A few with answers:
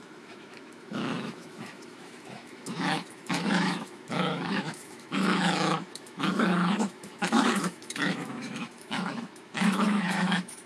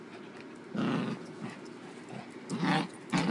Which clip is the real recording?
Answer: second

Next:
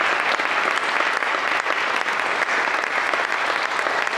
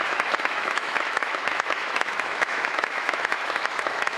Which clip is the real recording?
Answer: first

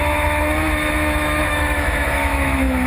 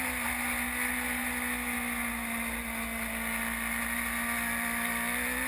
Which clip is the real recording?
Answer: second